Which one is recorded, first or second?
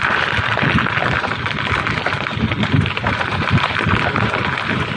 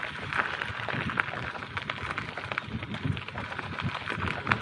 second